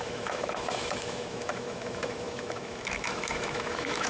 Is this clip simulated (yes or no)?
yes